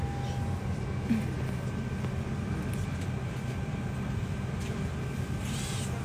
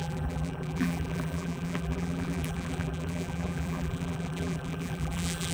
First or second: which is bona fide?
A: first